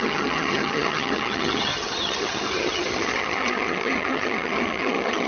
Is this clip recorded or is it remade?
remade